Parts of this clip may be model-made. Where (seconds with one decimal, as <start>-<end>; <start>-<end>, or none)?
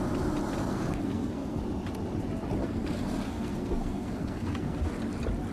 0.6-1.6; 2.6-4.9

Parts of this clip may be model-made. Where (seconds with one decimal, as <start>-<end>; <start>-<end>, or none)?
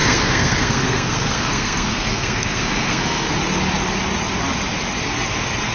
0.0-3.3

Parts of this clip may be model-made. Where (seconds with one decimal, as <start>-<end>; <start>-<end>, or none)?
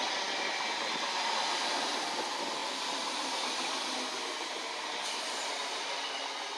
none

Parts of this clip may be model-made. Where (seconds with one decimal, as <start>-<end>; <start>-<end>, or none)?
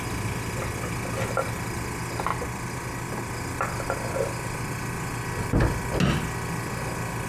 none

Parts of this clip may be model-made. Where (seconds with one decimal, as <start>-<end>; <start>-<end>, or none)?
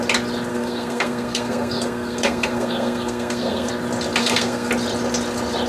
0.5-3.7; 4.2-4.7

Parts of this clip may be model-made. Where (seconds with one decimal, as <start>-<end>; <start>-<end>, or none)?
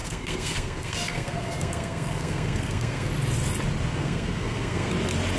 0.0-3.1; 4.0-4.9